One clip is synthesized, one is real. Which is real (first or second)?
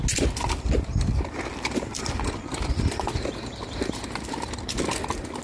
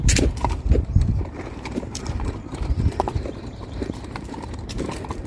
first